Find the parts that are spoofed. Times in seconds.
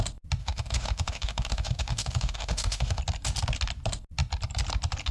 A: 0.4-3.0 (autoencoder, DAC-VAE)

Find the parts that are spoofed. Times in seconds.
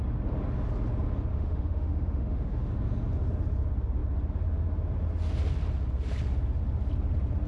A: 1.3-2.7 (autoencoder, DAC-VAE)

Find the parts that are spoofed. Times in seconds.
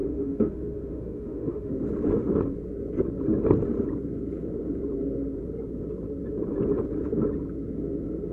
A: 0.0-1.7 (autoencoder, DAC-VAE)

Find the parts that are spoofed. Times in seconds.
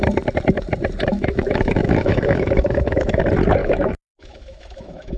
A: 1.1-3.2 (autoencoder, DAC-VAE); 3.6-5.2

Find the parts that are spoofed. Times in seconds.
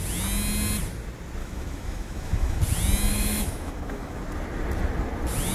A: 1.4-2.6 (autoencoder, DAC-VAE); 3.1-4.2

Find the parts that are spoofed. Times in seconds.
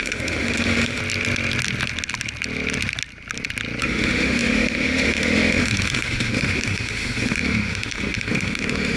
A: 0.0-1.0 (autoencoder, DAC-VAE); 3.8-9.0